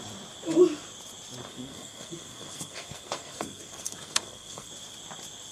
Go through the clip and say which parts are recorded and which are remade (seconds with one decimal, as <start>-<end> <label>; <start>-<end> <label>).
0.0-1.4 recorded; 1.4-4.7 remade; 4.7-5.5 recorded